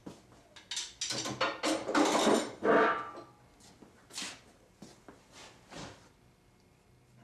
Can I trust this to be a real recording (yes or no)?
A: yes